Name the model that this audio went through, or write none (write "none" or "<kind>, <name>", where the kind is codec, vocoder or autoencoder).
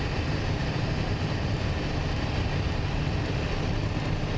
none